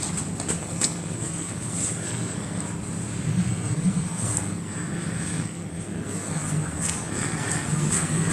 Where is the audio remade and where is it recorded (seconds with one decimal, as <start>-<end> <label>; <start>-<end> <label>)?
0.0-0.6 recorded; 0.6-2.6 remade; 2.6-3.3 recorded; 3.3-8.3 remade